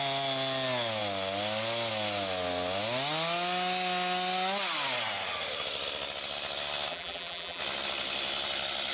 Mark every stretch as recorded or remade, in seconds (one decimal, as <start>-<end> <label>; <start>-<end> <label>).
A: 0.0-6.9 recorded; 6.9-7.6 remade; 7.6-8.9 recorded